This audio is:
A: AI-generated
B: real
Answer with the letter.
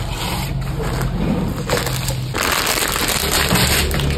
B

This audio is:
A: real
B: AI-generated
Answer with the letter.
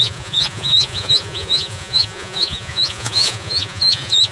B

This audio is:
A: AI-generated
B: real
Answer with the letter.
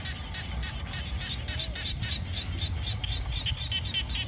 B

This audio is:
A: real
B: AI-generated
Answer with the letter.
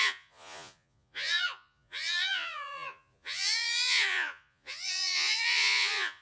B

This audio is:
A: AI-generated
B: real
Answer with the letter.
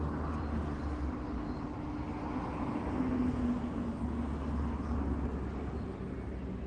B